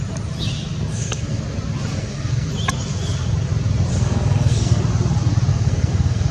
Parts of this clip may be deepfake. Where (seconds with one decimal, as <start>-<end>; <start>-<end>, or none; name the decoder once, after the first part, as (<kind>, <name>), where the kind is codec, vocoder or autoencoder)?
0.9-1.4 (codec, SNAC); 2.0-2.5; 3.9-4.8; 5.5-6.3